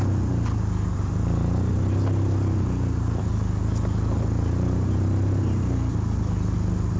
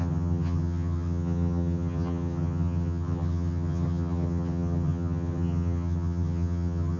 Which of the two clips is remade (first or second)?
second